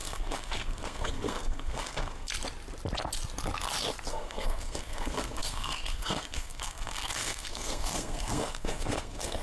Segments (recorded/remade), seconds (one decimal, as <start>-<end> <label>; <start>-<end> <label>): 0.0-2.3 remade; 2.3-4.1 recorded; 4.1-9.4 remade